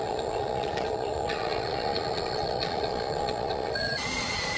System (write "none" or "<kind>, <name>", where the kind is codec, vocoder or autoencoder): vocoder, Vocos